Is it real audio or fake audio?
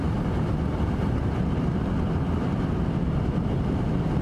real